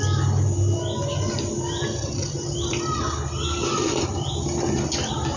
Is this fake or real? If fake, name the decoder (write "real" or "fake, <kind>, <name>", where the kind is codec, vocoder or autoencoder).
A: real